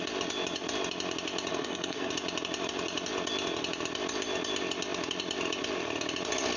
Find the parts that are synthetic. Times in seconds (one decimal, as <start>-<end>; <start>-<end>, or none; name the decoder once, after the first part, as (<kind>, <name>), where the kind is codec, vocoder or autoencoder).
1.5-2.1 (codec, SNAC)